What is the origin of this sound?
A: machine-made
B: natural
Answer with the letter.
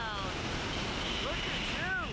B